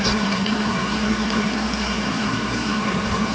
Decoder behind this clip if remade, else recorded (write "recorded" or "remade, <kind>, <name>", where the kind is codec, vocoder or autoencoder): remade, codec, SNAC